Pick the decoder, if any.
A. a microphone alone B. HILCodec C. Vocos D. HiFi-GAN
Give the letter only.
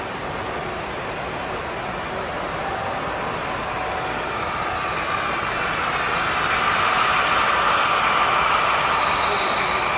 A